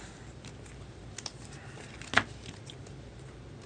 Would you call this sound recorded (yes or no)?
yes